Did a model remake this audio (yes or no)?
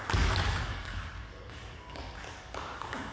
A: yes